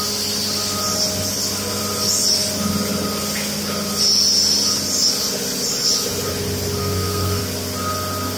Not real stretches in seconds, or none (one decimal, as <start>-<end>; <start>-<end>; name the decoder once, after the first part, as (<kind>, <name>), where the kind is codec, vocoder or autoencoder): 6.8-7.4 (codec, SNAC)

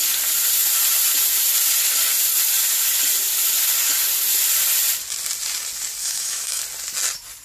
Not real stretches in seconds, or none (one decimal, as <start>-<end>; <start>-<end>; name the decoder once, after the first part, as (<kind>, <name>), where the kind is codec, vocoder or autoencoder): 6.0-6.6 (autoencoder, DAC-VAE)

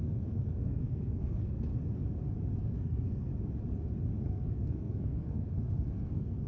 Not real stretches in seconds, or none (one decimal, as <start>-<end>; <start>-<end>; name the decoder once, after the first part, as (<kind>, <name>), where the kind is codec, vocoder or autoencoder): 0.0-1.7 (codec, SNAC); 2.6-3.3; 4.2-6.5

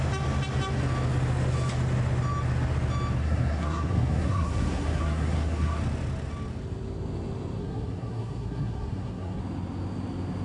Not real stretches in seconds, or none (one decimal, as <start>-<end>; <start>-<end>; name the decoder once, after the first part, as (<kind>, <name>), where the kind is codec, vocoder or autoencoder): 3.2-5.8 (codec, SNAC); 7.6-9.4

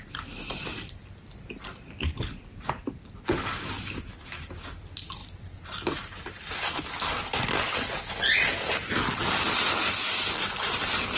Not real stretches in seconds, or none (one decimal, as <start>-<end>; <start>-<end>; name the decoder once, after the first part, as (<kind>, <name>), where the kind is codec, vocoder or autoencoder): 0.0-1.2 (vocoder, BigVGAN v2); 5.2-6.8

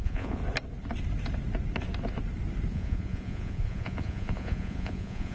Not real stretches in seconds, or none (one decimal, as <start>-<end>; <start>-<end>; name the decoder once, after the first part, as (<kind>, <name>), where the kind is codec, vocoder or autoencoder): 0.0-0.4 (vocoder, Vocos); 2.7-5.3

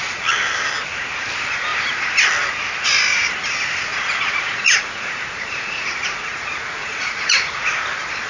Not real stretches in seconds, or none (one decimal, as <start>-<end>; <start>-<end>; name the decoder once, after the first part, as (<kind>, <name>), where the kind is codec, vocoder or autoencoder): 3.9-7.7 (vocoder, Vocos)

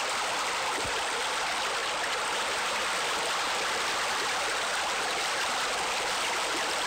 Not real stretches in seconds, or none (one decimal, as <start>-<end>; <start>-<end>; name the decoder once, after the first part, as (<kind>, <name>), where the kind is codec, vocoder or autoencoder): none